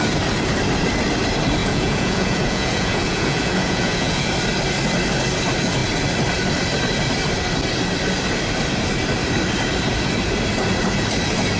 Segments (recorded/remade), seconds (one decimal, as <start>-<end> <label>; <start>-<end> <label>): 0.0-1.6 recorded; 1.6-4.3 remade; 4.3-11.6 recorded